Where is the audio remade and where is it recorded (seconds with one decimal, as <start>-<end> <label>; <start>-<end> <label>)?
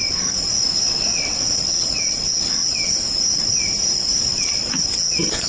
0.0-1.1 recorded; 1.1-2.9 remade; 2.9-4.3 recorded; 4.3-5.5 remade